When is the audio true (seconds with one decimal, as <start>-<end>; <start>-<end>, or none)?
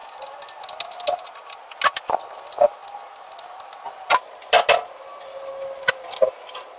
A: 0.0-6.8